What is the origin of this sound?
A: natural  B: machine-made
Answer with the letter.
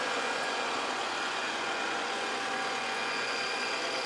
B